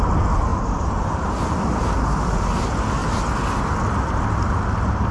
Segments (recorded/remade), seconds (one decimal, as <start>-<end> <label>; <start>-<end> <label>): 0.0-0.5 recorded; 0.5-2.6 remade; 2.6-5.1 recorded